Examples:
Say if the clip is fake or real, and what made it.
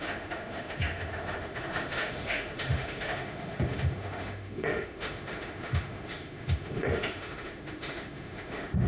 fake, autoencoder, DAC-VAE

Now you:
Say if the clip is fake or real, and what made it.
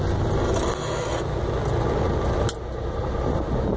real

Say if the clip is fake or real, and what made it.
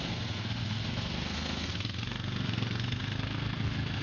fake, codec, SNAC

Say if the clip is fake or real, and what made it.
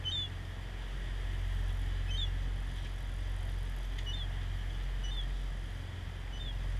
real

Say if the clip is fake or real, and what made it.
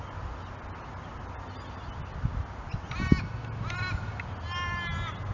real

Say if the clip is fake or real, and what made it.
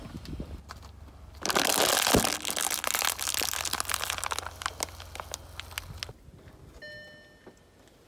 real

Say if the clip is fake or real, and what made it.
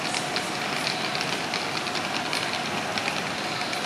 real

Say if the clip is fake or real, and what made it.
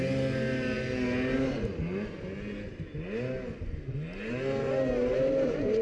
real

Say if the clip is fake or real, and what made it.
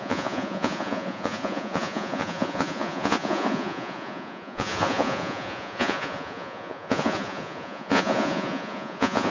fake, vocoder, Vocos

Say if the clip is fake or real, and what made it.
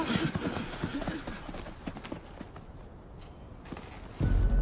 real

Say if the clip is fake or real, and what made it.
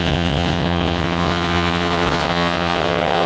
fake, vocoder, WaveNeXt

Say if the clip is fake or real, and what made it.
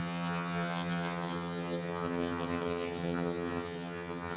fake, vocoder, HiFi-GAN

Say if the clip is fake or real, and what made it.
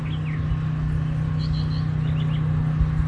real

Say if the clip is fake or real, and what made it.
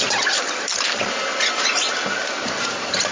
real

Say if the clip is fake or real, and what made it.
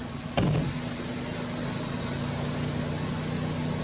real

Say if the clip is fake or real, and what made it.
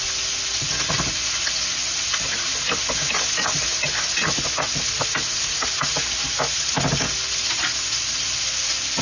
real